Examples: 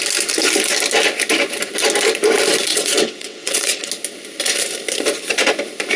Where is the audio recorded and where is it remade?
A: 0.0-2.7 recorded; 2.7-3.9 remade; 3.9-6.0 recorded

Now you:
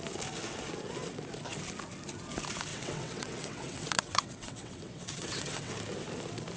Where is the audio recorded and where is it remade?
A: 0.0-2.7 recorded; 2.7-5.7 remade; 5.7-6.6 recorded

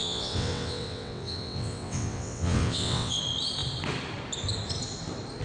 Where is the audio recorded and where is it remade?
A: 0.0-3.2 remade; 3.2-5.4 recorded

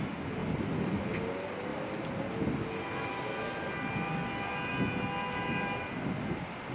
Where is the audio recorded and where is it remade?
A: 0.0-6.7 recorded

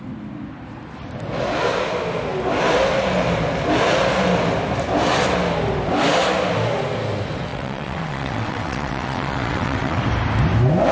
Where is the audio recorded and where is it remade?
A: 0.0-7.5 recorded; 7.5-10.0 remade; 10.0-10.9 recorded

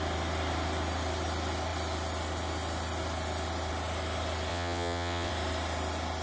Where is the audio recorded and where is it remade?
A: 0.0-4.5 recorded; 4.5-5.3 remade; 5.3-6.2 recorded